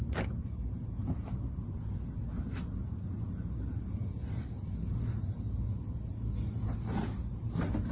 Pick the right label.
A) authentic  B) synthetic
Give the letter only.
A